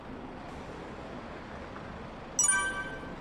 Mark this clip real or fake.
real